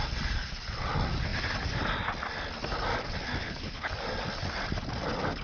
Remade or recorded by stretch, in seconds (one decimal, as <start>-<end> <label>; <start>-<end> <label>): 0.0-3.4 recorded; 3.4-3.9 remade; 3.9-5.4 recorded